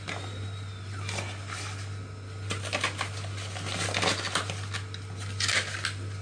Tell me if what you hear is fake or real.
real